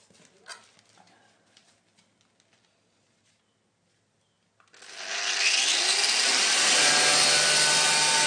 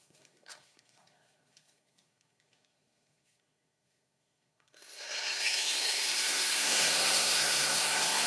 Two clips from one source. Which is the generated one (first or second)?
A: second